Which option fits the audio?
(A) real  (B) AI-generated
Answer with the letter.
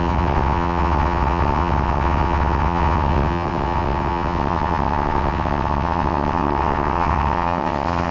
B